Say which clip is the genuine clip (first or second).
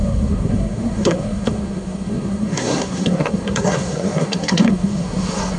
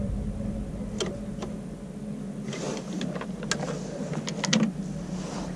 second